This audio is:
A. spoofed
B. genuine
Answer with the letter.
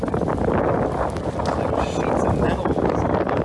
B